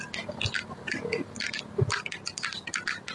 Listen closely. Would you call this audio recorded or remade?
recorded